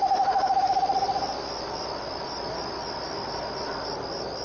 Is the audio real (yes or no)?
yes